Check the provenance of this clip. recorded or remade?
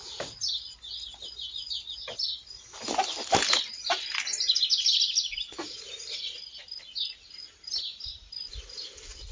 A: recorded